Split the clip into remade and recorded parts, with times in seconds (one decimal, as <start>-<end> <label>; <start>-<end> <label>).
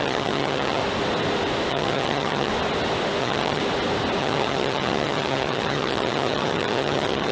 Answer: 0.0-0.8 remade; 0.8-1.7 recorded; 1.7-2.5 remade; 2.5-3.2 recorded; 3.2-3.6 remade; 3.6-4.2 recorded; 4.2-7.3 remade